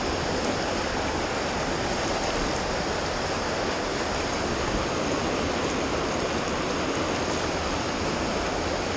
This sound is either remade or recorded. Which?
recorded